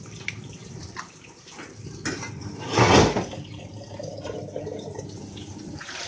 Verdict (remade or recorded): remade